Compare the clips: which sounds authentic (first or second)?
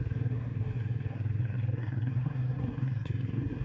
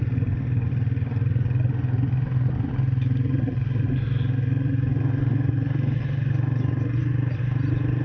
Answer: second